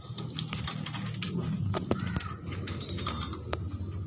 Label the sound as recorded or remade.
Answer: recorded